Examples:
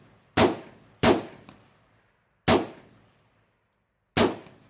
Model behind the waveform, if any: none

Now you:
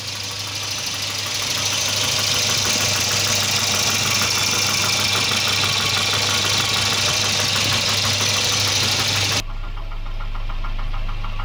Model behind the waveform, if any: none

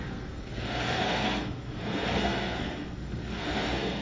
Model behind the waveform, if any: codec, SNAC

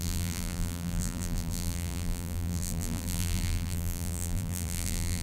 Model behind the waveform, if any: vocoder, BigVGAN v2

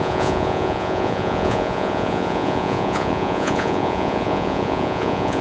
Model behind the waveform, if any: vocoder, Vocos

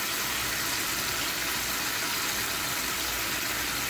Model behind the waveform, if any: none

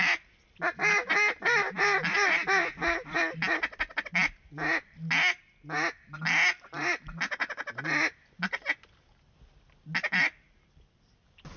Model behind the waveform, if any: none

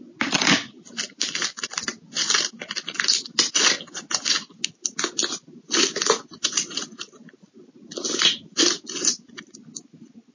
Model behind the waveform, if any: none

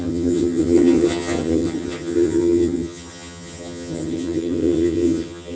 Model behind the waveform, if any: vocoder, HiFi-GAN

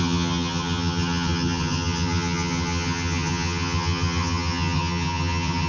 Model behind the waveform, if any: vocoder, HiFi-GAN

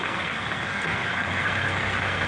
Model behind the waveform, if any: codec, SNAC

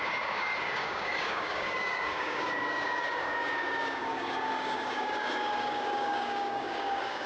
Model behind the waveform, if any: codec, DAC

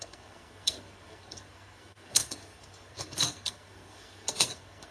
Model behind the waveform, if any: codec, SNAC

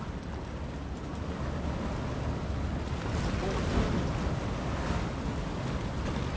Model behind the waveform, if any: none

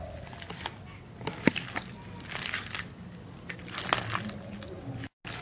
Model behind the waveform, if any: none